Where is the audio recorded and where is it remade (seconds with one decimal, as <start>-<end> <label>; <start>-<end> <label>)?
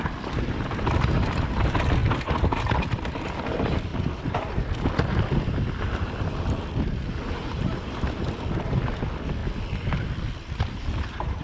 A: 0.0-11.4 recorded